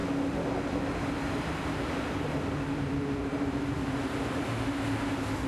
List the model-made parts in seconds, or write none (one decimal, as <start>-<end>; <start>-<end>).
none